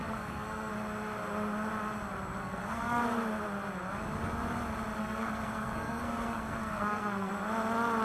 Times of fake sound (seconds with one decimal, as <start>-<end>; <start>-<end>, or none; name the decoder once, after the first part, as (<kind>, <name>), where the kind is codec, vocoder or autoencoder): 0.0-0.7 (codec, SNAC); 2.4-3.0; 5.0-7.3